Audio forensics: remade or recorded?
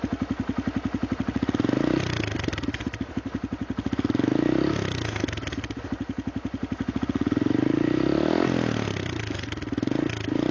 recorded